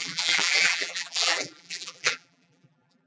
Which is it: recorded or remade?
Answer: remade